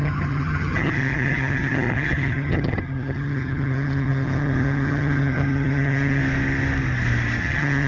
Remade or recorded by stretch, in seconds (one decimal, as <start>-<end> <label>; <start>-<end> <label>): 0.0-6.2 remade; 6.2-7.4 recorded; 7.4-7.9 remade